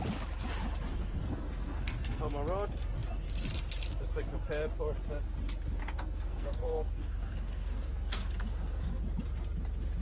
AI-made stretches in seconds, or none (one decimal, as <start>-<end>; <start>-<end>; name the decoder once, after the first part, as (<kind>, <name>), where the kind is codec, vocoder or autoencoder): 0.9-2.2 (codec, SNAC); 5.8-9.0